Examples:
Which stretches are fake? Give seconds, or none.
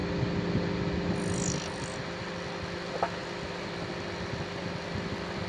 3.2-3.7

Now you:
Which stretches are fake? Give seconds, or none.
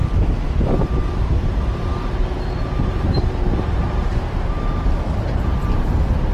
0.0-6.3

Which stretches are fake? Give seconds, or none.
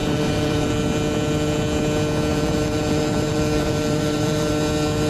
0.0-0.7; 2.3-4.5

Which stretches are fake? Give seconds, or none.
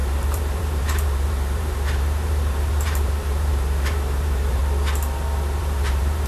0.0-4.6; 5.6-6.3